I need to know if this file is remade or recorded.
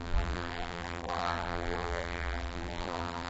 remade